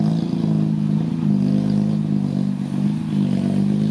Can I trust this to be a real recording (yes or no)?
yes